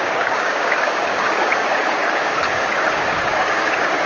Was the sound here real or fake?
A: fake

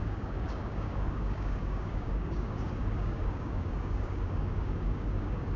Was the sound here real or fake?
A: fake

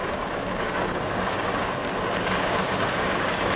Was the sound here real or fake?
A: fake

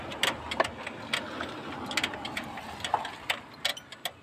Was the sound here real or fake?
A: real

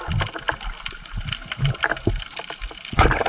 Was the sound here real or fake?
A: real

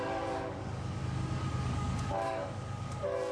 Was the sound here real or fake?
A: fake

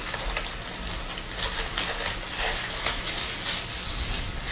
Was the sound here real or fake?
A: real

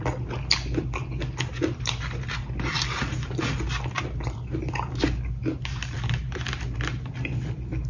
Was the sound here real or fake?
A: real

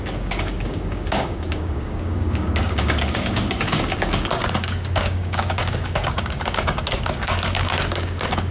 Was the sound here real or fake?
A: fake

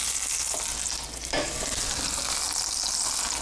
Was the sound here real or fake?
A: real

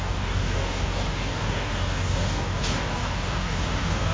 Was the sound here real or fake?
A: fake